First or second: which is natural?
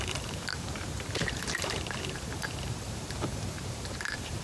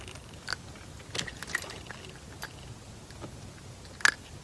second